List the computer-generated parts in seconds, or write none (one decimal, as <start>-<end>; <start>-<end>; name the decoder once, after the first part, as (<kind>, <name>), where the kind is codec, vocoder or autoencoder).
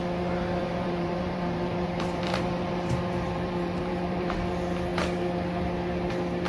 0.6-4.5 (vocoder, BigVGAN v2)